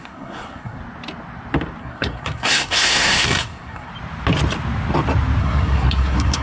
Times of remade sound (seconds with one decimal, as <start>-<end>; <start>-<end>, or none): 0.0-0.8; 1.8-3.9; 5.4-6.4